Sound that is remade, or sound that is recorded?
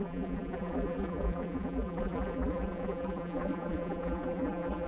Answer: remade